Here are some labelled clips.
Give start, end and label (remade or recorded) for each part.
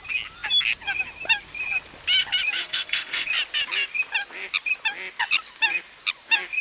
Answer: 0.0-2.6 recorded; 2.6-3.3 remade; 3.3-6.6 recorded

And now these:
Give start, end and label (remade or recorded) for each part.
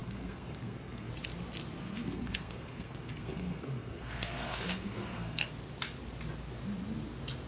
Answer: 0.0-1.1 remade; 1.1-1.8 recorded; 1.8-5.5 remade; 5.5-7.5 recorded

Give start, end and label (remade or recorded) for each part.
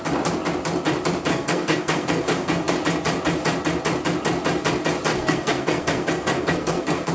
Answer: 0.0-1.3 recorded; 1.3-2.7 remade; 2.7-5.1 recorded; 5.1-7.1 remade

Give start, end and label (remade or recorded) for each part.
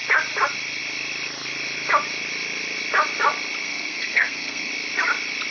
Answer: 0.0-3.6 recorded; 3.6-4.7 remade; 4.7-5.5 recorded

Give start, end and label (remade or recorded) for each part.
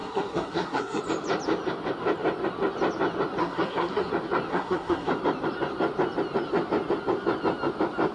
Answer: 0.0-1.0 remade; 1.0-3.4 recorded; 3.4-4.1 remade; 4.1-4.5 recorded; 4.5-5.1 remade; 5.1-8.1 recorded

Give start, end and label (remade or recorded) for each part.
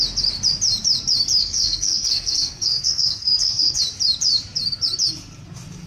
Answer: 0.0-1.4 recorded; 1.4-3.8 remade; 3.8-5.9 recorded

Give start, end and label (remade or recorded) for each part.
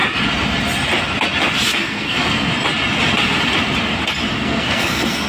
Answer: 0.0-1.7 recorded; 1.7-2.5 remade; 2.5-4.3 recorded; 4.3-5.3 remade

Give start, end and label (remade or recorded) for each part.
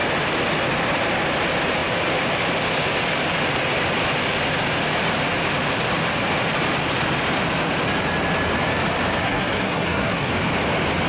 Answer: 0.0-9.2 recorded; 9.2-10.3 remade; 10.3-11.1 recorded